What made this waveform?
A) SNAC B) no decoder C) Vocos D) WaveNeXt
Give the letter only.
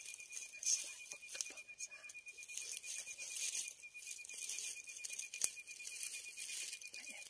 B